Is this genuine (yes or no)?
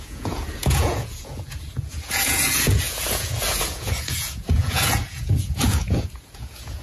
no